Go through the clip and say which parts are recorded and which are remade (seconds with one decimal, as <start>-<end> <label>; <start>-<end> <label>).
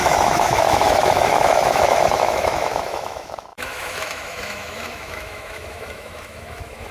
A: 0.0-6.9 remade